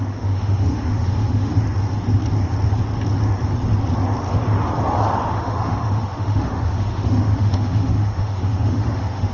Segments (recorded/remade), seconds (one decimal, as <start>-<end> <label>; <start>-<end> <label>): 0.0-1.5 remade; 1.5-5.3 recorded; 5.3-9.3 remade